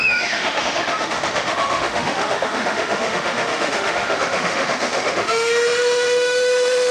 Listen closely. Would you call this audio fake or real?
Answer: fake